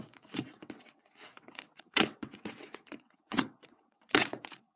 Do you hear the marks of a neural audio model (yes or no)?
yes